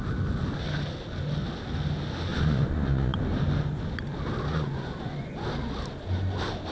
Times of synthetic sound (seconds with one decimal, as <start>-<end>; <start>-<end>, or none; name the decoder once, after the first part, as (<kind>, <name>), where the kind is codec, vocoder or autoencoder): 2.3-3.3 (vocoder, Vocos); 4.5-5.3

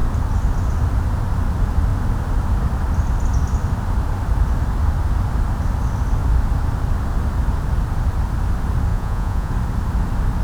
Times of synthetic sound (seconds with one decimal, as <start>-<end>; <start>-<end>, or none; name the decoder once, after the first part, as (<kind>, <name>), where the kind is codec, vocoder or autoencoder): 8.9-9.5 (vocoder, Vocos)

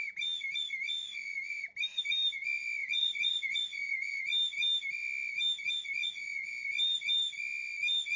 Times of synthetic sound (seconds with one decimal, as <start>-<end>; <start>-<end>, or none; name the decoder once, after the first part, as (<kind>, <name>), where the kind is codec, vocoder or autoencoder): 1.0-1.6 (vocoder, Vocos); 2.8-4.2; 6.0-6.5

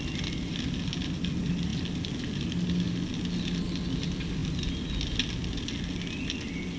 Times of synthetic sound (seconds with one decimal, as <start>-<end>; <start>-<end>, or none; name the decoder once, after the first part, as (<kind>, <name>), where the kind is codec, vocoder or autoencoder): none

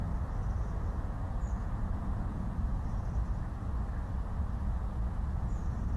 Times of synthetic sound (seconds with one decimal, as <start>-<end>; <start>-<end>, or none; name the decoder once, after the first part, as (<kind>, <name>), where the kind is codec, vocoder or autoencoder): 0.4-3.1 (vocoder, Vocos); 4.3-5.6